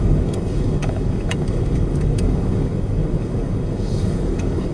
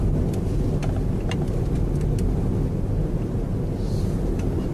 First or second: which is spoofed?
first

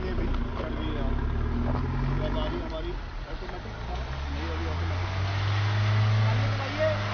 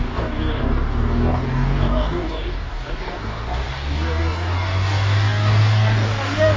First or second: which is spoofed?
second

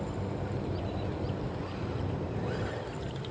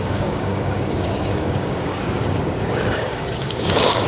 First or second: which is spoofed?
second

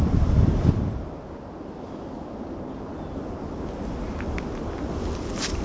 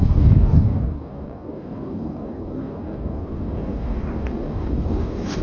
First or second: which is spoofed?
second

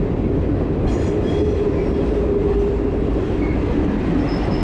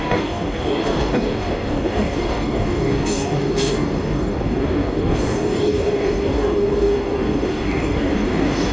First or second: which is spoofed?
second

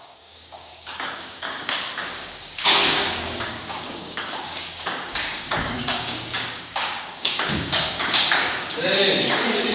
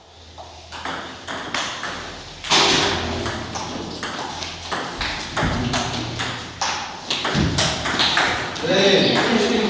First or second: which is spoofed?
first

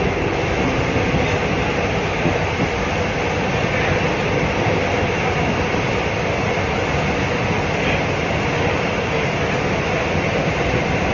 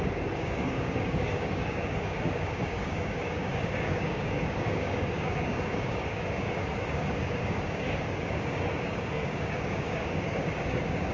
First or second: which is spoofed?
second